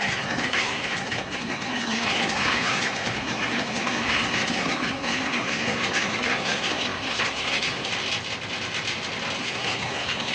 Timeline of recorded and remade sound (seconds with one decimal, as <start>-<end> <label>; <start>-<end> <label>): 0.0-7.9 remade; 7.9-9.4 recorded; 9.4-10.3 remade

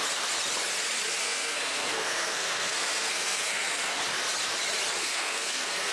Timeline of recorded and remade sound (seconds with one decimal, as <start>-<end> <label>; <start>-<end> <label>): 0.0-1.2 recorded; 1.2-4.0 remade; 4.0-5.0 recorded; 5.0-5.9 remade

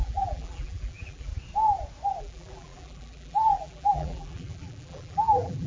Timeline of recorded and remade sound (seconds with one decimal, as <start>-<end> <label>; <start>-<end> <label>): 0.0-1.3 remade; 1.3-2.2 recorded; 2.2-5.7 remade